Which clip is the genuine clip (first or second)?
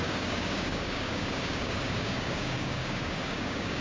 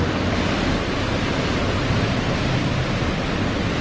second